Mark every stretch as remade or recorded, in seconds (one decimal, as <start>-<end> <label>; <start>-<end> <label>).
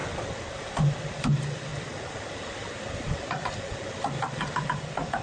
0.0-5.2 recorded